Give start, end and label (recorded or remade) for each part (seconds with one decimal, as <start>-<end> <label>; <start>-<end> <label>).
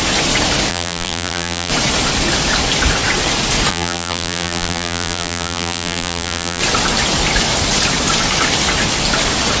0.0-0.7 recorded; 0.7-1.7 remade; 1.7-3.7 recorded; 3.7-6.6 remade; 6.6-9.6 recorded